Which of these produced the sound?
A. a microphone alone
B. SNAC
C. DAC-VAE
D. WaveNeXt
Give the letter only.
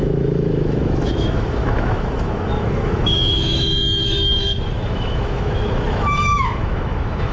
C